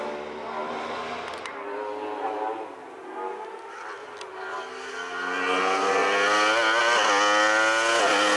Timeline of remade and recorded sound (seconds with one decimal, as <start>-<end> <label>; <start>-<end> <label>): 0.0-8.4 recorded